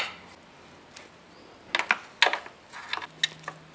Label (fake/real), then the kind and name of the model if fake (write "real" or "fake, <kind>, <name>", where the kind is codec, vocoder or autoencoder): real